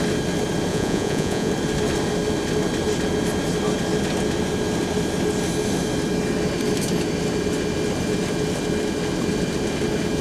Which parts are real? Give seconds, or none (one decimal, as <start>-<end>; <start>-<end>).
0.0-0.7; 1.5-10.2